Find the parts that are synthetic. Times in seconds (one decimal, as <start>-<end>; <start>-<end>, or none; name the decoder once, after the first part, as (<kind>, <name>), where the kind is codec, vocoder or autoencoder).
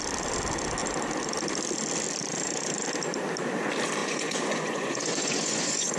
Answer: 4.0-6.0 (vocoder, Vocos)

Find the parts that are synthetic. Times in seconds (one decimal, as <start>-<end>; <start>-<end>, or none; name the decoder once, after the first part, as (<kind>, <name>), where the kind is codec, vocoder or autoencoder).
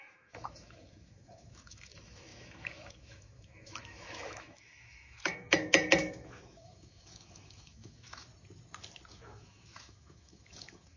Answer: 0.0-8.3 (autoencoder, DAC-VAE); 9.1-11.0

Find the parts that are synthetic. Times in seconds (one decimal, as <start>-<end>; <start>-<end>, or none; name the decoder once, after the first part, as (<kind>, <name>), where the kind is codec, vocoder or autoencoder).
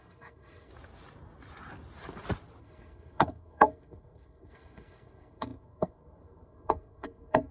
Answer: 0.0-0.7 (codec, SNAC); 2.6-7.5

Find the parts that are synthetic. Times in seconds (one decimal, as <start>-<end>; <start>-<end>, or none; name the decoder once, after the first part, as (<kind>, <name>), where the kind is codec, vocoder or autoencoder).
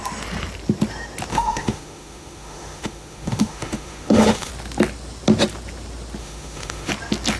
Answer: 1.3-4.5 (autoencoder, DAC-VAE); 6.2-6.9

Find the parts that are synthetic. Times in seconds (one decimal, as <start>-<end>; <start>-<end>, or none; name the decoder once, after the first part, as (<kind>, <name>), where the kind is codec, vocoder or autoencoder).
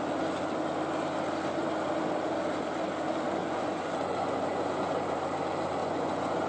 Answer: 3.4-4.9 (vocoder, Vocos); 5.8-6.5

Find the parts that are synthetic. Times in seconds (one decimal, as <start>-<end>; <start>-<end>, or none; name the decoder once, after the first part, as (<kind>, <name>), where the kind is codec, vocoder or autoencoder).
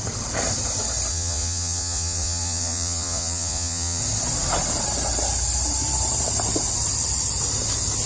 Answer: 1.1-4.0 (vocoder, Vocos)